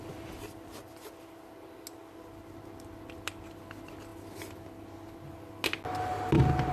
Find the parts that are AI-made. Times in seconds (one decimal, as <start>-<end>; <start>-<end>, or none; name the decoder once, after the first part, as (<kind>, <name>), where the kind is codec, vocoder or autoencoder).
none